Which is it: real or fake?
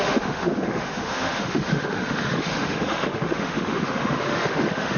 fake